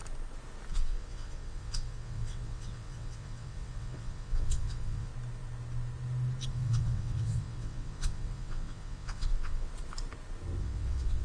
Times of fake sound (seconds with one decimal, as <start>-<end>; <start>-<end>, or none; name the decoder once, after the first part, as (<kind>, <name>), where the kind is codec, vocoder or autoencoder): 0.7-5.1 (vocoder, WaveNeXt); 6.5-9.7; 10.6-11.2